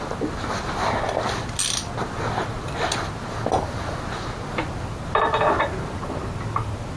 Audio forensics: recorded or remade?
recorded